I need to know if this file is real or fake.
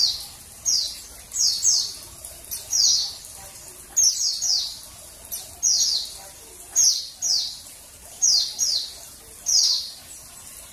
real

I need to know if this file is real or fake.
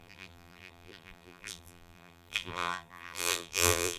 fake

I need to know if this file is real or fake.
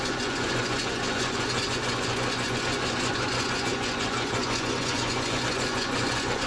fake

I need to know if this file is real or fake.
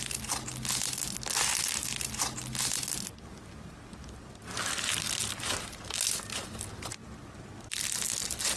real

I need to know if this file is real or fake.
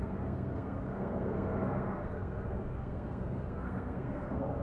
fake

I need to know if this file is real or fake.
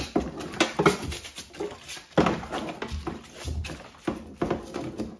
real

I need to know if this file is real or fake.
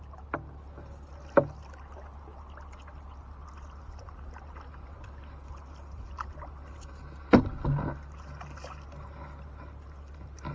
real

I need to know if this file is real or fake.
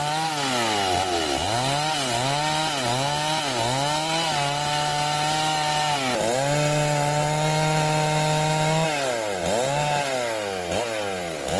real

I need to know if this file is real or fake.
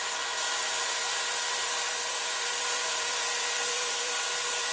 fake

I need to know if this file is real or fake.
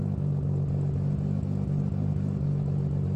real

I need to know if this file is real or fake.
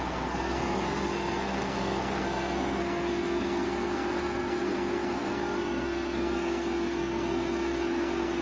fake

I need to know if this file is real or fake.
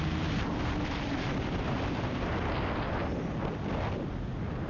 real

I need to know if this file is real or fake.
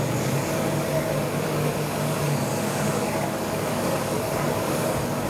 fake